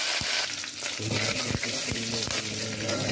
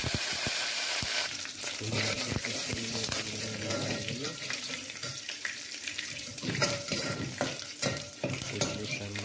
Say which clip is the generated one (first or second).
second